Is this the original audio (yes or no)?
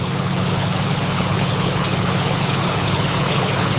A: no